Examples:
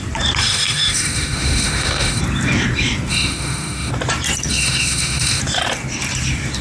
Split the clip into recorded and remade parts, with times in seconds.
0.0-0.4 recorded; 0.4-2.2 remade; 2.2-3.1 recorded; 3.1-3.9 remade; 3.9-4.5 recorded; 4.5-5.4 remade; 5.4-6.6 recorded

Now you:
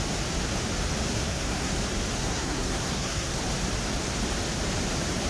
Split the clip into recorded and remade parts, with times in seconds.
0.0-1.1 recorded; 1.1-1.7 remade; 1.7-2.2 recorded; 2.2-3.4 remade; 3.4-5.3 recorded

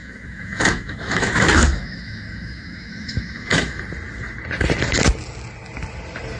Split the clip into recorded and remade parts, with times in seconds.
0.0-3.8 remade; 3.8-6.4 recorded

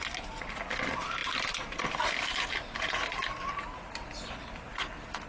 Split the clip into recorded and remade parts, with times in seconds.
0.0-5.3 recorded

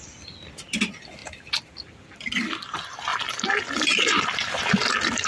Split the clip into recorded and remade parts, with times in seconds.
0.0-5.3 recorded

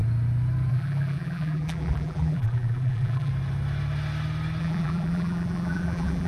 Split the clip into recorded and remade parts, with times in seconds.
0.0-0.7 recorded; 0.7-3.3 remade; 3.3-4.6 recorded; 4.6-6.3 remade

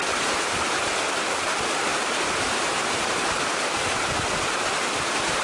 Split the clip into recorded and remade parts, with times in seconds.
0.0-5.4 recorded